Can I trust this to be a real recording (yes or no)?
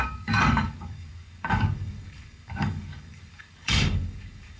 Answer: no